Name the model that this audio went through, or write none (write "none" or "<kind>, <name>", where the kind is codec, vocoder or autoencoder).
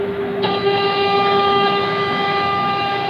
autoencoder, DAC-VAE